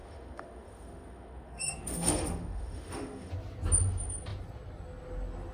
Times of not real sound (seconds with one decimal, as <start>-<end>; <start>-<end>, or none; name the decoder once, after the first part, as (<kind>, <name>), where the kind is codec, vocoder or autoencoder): 0.0-3.3 (autoencoder, DAC-VAE)